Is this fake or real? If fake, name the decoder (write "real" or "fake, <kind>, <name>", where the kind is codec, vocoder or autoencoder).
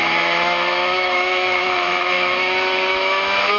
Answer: fake, autoencoder, DAC-VAE